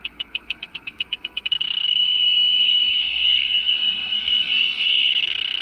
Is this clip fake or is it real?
fake